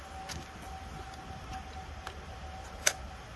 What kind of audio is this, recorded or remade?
recorded